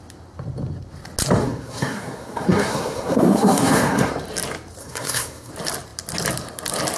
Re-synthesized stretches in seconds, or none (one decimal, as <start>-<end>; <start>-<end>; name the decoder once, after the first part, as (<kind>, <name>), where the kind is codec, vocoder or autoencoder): 1.4-4.1 (codec, SNAC); 4.8-5.5